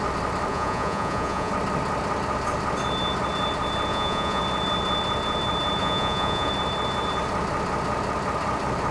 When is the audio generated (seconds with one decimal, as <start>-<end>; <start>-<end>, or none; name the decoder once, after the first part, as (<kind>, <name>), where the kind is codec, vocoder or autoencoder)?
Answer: 0.5-1.5 (vocoder, Vocos); 3.9-4.4; 5.8-6.5